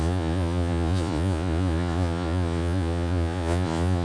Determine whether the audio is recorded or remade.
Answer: remade